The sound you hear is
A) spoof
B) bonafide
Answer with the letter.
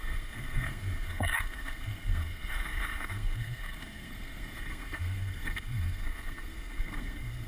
A